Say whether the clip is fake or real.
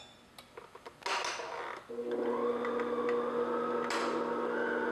real